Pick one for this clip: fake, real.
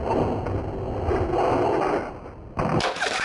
real